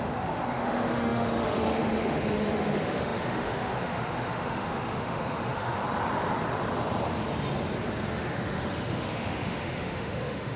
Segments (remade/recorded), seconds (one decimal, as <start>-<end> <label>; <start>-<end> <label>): 0.0-5.8 remade; 5.8-8.1 recorded; 8.1-10.6 remade